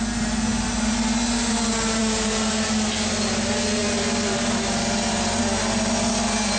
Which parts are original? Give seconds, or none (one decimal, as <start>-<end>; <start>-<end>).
0.0-6.6